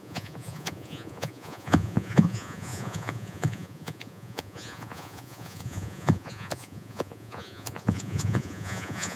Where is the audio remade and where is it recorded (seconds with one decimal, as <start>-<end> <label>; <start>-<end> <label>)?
0.0-9.2 remade